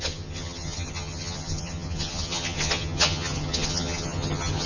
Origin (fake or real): fake